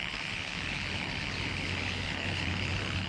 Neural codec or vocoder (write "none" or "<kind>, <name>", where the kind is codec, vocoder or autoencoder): codec, HILCodec